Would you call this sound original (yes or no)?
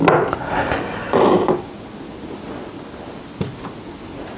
yes